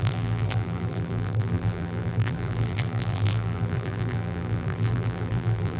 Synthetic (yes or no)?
yes